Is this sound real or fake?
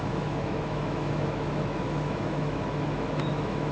fake